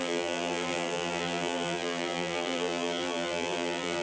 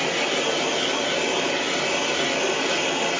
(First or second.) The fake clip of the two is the first